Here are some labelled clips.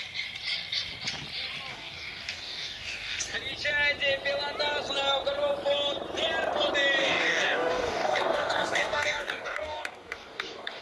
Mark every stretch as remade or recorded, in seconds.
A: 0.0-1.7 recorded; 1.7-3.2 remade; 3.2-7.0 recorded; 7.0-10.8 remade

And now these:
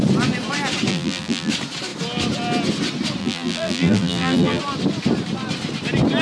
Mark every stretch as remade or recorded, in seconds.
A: 0.0-0.9 recorded; 0.9-1.5 remade; 1.5-3.2 recorded; 3.2-4.6 remade; 4.6-6.2 recorded

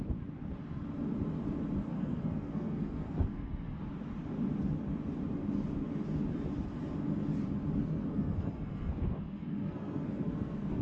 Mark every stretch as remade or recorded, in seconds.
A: 0.0-1.9 recorded; 1.9-3.8 remade; 3.8-7.8 recorded; 7.8-10.8 remade

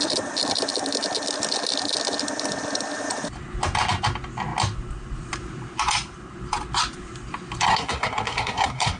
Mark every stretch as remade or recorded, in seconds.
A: 0.0-7.7 recorded; 7.7-9.0 remade

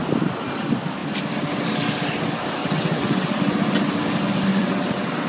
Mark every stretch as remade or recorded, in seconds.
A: 0.0-2.6 recorded; 2.6-3.4 remade; 3.4-4.5 recorded; 4.5-5.3 remade

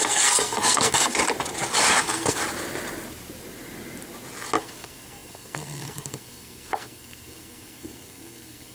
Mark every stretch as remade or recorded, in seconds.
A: 0.0-1.2 remade; 1.2-2.0 recorded; 2.0-2.4 remade; 2.4-4.6 recorded; 4.6-8.7 remade

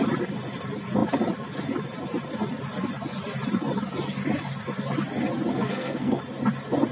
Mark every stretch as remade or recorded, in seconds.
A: 0.0-5.5 recorded; 5.5-6.2 remade; 6.2-6.9 recorded